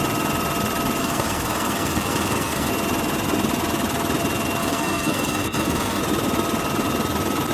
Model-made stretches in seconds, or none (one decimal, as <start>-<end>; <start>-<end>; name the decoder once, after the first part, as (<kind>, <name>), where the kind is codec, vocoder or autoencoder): 1.0-2.7 (codec, SNAC); 4.6-6.0